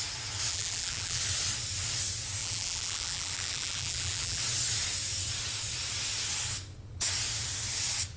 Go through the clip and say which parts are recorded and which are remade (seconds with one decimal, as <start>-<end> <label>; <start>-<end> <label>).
0.0-0.5 recorded; 0.5-1.2 remade; 1.2-2.4 recorded; 2.4-4.4 remade; 4.4-8.2 recorded